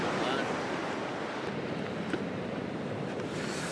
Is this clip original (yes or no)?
yes